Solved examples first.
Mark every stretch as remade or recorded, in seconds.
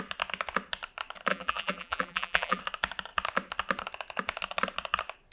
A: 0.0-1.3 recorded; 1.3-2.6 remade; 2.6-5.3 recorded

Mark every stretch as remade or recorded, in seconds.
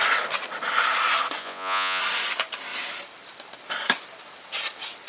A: 0.0-1.4 recorded; 1.4-2.0 remade; 2.0-5.1 recorded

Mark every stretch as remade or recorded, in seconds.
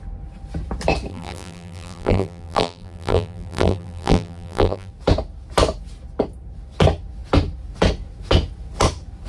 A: 0.0-1.1 recorded; 1.1-4.9 remade; 4.9-9.3 recorded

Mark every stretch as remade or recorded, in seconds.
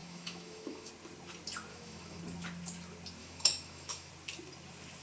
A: 0.0-0.9 remade; 0.9-1.7 recorded; 1.7-2.2 remade; 2.2-3.2 recorded; 3.2-4.1 remade; 4.1-5.0 recorded